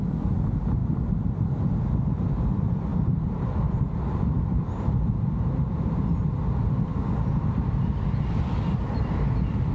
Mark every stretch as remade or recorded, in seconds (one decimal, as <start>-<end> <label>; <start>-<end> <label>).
0.0-2.9 recorded; 2.9-5.8 remade; 5.8-9.7 recorded

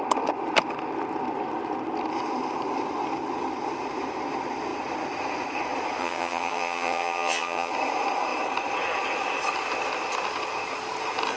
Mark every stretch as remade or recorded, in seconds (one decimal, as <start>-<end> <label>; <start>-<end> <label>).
0.0-6.0 recorded; 6.0-7.7 remade; 7.7-11.4 recorded

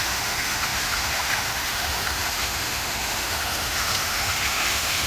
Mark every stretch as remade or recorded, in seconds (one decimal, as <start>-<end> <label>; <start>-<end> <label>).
0.0-5.1 remade

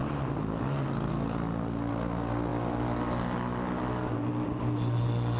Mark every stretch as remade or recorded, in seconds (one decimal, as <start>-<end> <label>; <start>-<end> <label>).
0.0-5.4 recorded

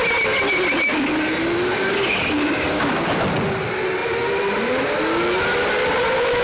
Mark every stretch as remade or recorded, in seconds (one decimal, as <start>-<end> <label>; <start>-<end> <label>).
0.0-1.7 recorded; 1.7-2.9 remade; 2.9-6.4 recorded

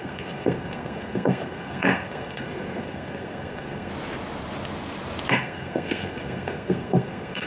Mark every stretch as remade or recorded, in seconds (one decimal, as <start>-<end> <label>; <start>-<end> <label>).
0.0-3.9 remade; 3.9-5.3 recorded; 5.3-7.5 remade

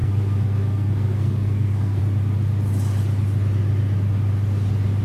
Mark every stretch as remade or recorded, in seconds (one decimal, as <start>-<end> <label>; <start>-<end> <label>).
0.0-2.0 remade; 2.0-5.0 recorded

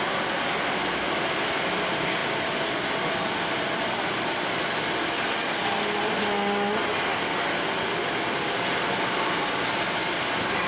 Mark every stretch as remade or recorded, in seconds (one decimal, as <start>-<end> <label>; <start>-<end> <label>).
0.0-10.7 recorded